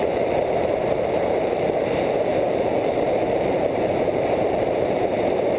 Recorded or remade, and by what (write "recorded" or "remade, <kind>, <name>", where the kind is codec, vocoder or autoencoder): remade, vocoder, BigVGAN v2